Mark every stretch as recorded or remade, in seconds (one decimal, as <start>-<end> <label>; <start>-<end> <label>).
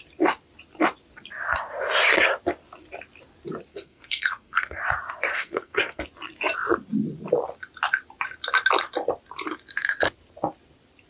0.0-3.7 recorded; 3.7-4.8 remade; 4.8-5.3 recorded; 5.3-6.0 remade; 6.0-11.1 recorded